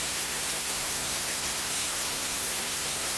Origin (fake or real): fake